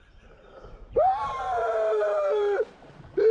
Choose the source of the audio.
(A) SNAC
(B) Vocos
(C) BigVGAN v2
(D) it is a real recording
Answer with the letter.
C